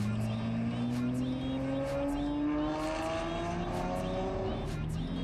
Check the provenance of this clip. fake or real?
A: real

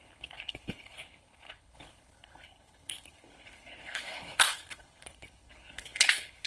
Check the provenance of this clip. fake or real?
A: fake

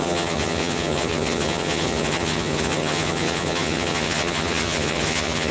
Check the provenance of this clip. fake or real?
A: fake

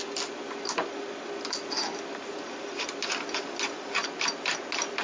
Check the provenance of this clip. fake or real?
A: real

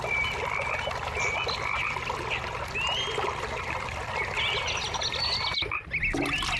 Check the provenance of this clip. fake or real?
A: real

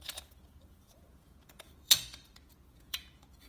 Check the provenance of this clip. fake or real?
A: fake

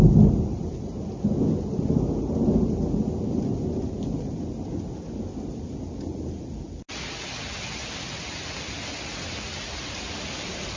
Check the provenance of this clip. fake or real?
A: real